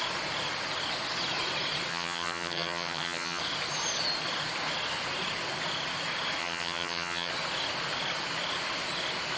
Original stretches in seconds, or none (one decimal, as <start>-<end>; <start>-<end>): 0.0-1.9; 3.4-6.4; 7.3-9.4